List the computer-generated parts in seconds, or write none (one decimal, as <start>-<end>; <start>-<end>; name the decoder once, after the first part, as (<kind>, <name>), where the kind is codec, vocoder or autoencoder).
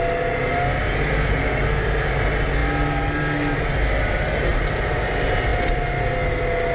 4.5-5.0 (vocoder, BigVGAN v2); 5.5-6.0